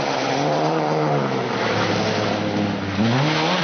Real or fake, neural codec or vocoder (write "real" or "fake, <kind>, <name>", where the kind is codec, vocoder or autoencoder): real